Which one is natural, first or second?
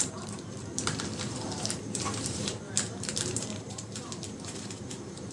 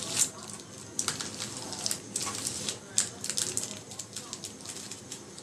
second